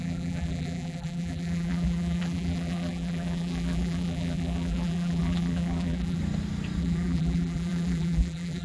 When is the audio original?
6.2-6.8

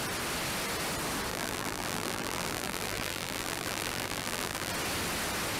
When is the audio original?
0.0-1.3; 4.7-5.6

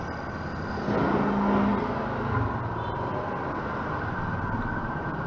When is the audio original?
0.0-5.3

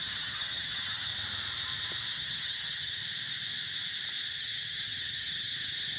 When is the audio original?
1.1-2.1; 3.0-4.3

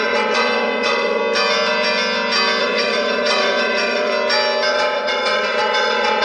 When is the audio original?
1.2-2.6; 4.1-4.7

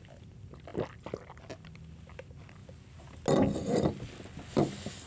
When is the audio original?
0.0-5.1

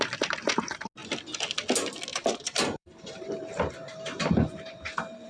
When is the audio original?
0.0-2.1

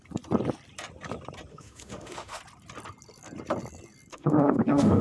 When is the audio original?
0.0-1.5; 2.4-4.1